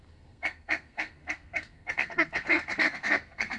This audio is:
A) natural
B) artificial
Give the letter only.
B